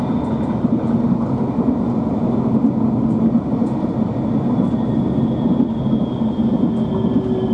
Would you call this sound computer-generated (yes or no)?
no